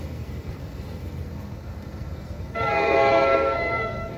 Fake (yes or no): yes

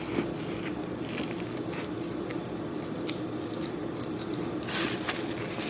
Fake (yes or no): no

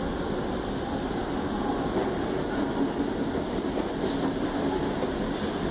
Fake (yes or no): no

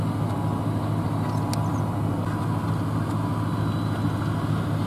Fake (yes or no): no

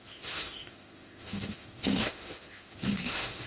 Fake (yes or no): yes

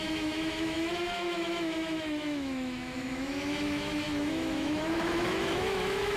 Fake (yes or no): yes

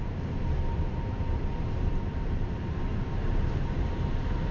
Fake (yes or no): yes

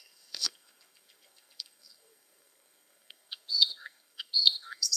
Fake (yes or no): yes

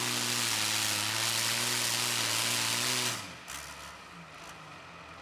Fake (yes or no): no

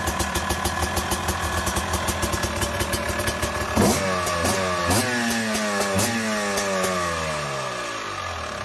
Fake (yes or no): no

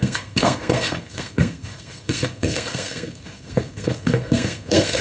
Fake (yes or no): yes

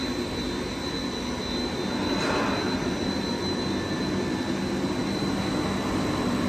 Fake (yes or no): no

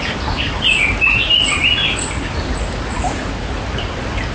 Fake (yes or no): no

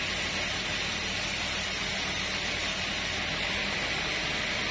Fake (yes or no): no